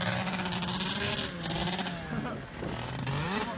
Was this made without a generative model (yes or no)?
yes